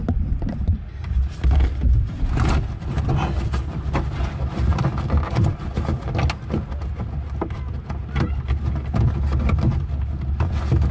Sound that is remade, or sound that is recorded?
recorded